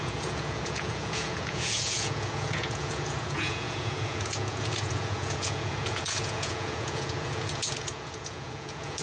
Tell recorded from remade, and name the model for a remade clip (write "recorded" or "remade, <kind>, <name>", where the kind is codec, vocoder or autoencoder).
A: remade, vocoder, Vocos